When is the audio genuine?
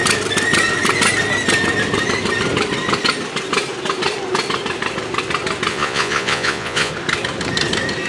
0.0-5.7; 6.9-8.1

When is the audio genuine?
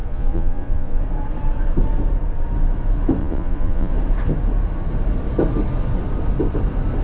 1.0-3.2; 3.9-7.0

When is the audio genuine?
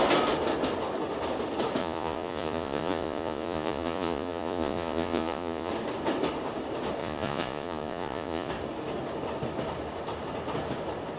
0.0-1.8; 5.7-7.0; 8.5-11.2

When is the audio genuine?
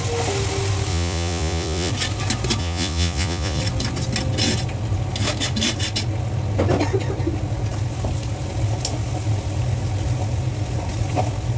0.0-0.9; 1.9-2.6; 3.6-11.6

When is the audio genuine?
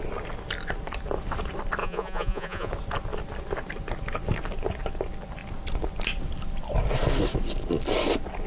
0.0-1.8; 2.7-8.5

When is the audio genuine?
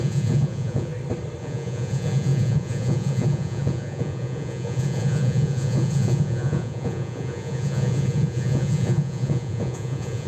0.9-1.4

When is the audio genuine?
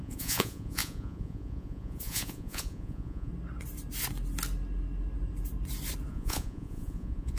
3.3-6.1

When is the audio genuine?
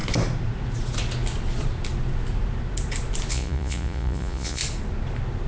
0.0-3.3; 4.6-5.5